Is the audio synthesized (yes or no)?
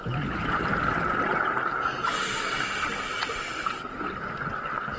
no